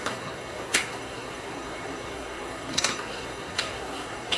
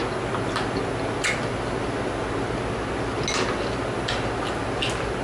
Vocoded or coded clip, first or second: first